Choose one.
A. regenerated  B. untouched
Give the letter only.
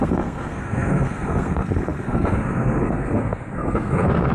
A